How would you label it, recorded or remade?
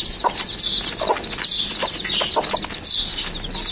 recorded